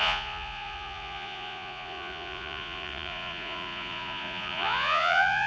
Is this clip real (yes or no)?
no